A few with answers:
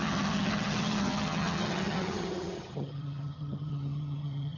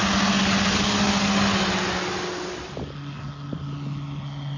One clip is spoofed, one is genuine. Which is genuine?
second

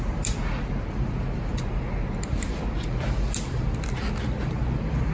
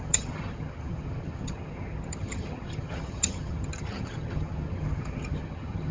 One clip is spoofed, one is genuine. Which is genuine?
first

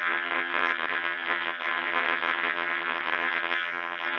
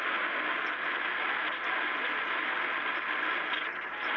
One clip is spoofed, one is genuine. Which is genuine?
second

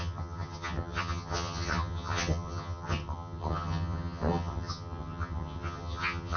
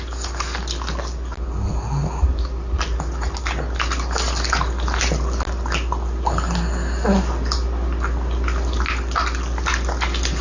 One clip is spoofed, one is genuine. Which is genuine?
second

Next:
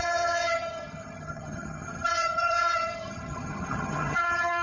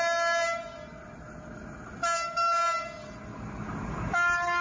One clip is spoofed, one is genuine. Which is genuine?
second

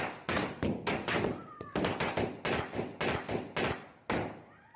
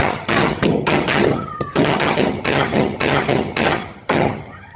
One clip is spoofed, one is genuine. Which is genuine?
first